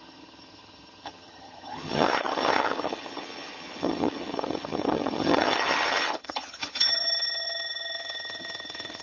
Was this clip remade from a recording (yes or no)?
yes